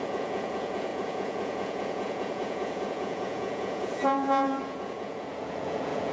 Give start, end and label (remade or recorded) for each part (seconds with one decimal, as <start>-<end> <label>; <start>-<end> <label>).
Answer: 0.0-6.1 remade